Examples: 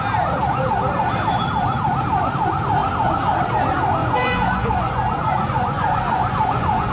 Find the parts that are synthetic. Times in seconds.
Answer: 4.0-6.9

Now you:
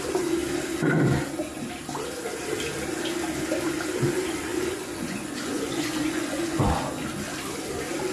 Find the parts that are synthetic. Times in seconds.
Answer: 4.5-6.6